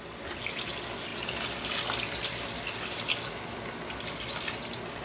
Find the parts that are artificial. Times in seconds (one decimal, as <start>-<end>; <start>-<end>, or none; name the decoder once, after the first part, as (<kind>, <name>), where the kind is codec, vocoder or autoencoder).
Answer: none